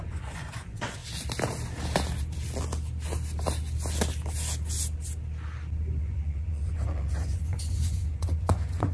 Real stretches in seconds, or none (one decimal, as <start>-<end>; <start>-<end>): 1.0-6.0